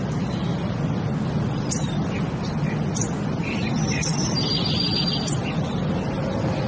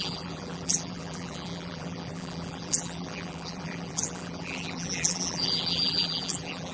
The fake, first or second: second